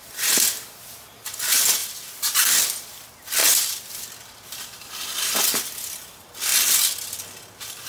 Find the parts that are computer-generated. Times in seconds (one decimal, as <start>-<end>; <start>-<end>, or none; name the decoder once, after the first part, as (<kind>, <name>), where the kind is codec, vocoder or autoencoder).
1.8-2.9 (vocoder, BigVGAN v2); 3.4-4.6; 6.5-7.9